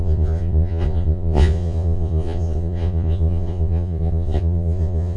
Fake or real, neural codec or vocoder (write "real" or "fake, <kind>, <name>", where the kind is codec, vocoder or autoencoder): fake, vocoder, Vocos